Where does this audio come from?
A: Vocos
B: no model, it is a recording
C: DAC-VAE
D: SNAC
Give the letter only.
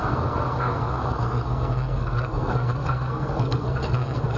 D